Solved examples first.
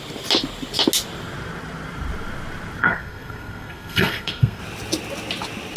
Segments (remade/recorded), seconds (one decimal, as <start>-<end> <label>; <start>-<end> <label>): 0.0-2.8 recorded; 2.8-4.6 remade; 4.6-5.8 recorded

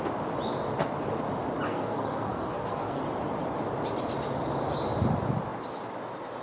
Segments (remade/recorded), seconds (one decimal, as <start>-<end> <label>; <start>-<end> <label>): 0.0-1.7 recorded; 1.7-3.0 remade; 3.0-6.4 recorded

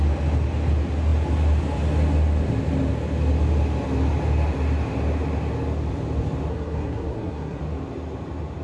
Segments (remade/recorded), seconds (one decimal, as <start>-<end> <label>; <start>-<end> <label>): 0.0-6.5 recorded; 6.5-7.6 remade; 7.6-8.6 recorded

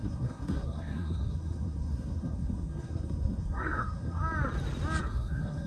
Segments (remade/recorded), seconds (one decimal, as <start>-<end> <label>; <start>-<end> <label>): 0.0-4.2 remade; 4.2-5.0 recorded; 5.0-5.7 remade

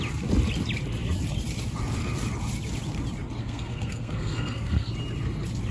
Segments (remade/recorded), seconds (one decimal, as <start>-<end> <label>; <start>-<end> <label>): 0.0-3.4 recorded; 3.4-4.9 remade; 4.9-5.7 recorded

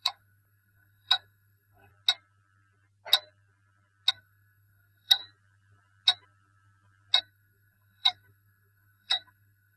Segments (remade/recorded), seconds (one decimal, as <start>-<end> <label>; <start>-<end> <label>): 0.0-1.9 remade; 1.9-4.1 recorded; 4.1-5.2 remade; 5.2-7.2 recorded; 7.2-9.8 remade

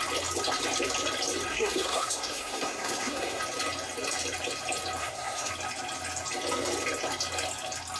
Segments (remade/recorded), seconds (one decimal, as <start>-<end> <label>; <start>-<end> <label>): 0.0-1.5 recorded; 1.5-3.4 remade; 3.4-5.0 recorded; 5.0-5.5 remade; 5.5-8.0 recorded